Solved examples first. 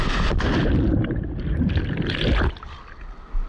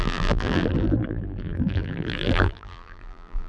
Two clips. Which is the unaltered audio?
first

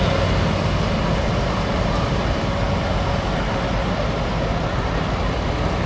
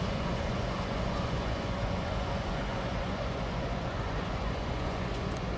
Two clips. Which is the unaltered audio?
first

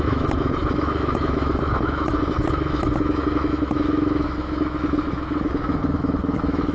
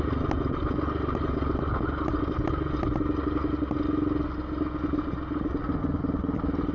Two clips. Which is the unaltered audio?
second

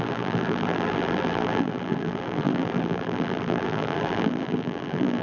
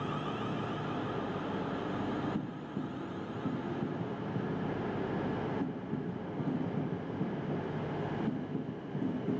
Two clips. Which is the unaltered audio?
second